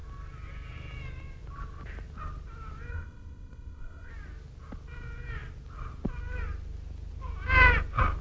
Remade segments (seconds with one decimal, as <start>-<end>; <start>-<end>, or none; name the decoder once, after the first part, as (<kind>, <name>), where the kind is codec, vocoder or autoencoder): 2.9-4.1 (codec, ZipCodec)